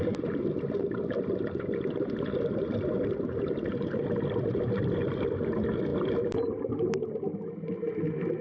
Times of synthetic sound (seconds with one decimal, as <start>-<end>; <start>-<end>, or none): none

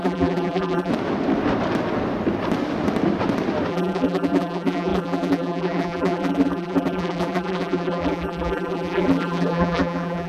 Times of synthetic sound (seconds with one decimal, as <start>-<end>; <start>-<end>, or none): 0.0-0.9; 3.7-10.3

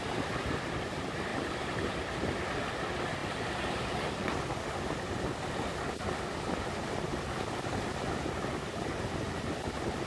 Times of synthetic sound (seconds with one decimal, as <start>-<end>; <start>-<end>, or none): 1.3-1.9

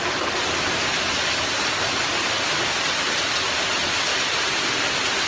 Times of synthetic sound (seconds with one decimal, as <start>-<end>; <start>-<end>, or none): 0.4-3.6; 4.1-4.8